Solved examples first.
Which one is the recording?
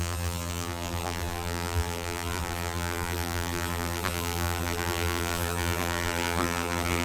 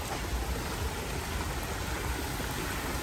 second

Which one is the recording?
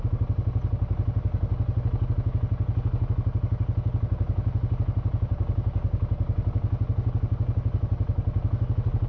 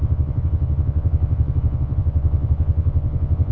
first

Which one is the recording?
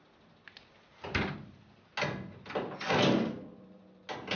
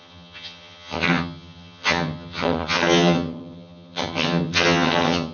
first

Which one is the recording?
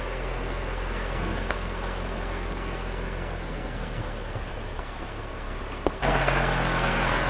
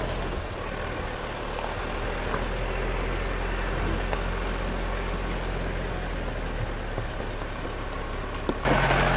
second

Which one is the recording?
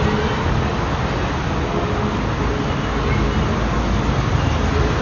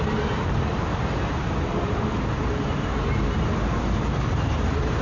first